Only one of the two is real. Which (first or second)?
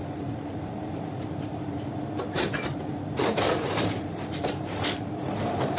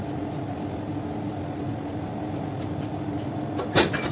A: second